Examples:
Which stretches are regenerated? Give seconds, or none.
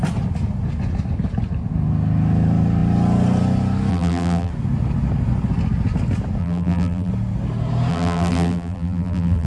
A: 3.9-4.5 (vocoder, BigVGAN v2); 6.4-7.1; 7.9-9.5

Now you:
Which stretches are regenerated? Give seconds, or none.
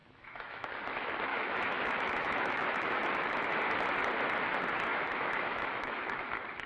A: 0.0-0.7 (autoencoder, DAC-VAE); 1.3-3.5; 4.9-6.3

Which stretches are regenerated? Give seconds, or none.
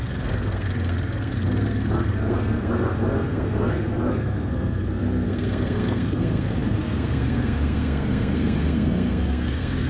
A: 0.0-9.9 (codec, SNAC)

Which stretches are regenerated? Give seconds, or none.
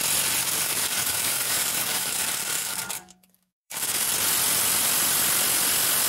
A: 0.4-4.1 (codec, DAC)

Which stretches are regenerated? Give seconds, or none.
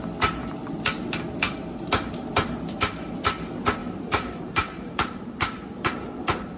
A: 3.8-5.2 (vocoder, BigVGAN v2)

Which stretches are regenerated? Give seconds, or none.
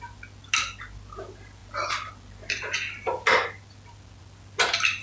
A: none